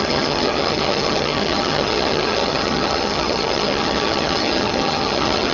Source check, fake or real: fake